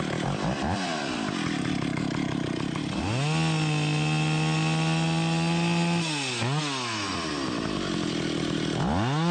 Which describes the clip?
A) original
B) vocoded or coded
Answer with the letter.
A